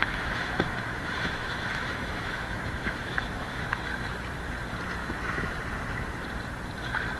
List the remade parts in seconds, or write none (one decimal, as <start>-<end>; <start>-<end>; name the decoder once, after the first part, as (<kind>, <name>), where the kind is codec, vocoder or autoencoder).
0.0-3.8 (autoencoder, DAC-VAE); 5.0-5.6